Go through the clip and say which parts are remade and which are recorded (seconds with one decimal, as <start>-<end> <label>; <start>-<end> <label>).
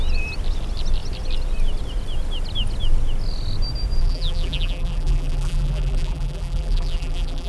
0.0-4.0 recorded; 4.0-7.5 remade